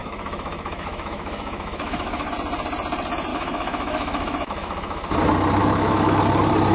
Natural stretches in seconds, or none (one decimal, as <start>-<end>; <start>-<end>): 2.3-3.3; 5.1-5.6; 6.2-6.7